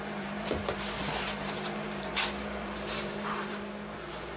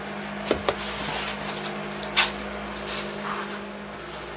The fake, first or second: first